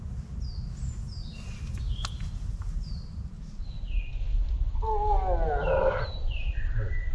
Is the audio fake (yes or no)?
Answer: no